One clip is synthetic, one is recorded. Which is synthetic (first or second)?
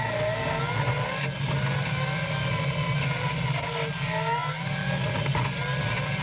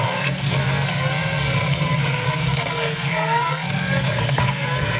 second